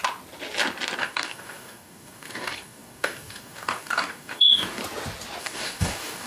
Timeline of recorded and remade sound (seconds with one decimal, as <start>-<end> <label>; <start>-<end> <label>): 0.0-1.0 recorded; 1.0-4.8 remade; 4.8-5.4 recorded; 5.4-6.3 remade